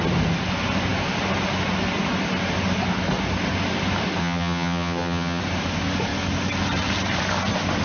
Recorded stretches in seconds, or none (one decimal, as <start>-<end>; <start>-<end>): 0.0-4.2; 5.4-7.8